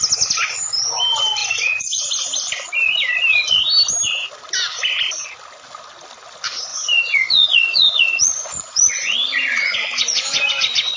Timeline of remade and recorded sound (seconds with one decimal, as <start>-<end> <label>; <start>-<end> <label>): 0.0-1.4 recorded; 1.4-2.1 remade; 2.1-6.7 recorded; 6.7-10.5 remade; 10.5-11.0 recorded